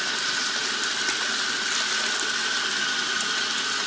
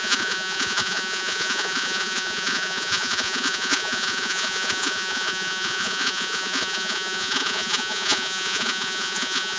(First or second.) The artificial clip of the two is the second